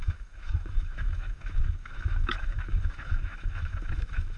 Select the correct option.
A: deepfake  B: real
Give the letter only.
A